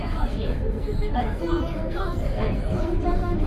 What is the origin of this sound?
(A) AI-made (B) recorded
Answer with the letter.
A